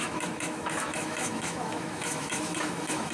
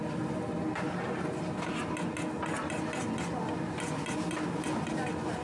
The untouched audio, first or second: second